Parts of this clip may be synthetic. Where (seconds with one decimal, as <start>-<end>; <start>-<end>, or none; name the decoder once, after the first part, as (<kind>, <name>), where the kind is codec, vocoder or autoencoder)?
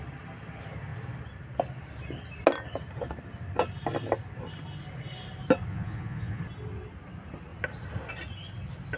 5.7-6.4 (vocoder, Vocos)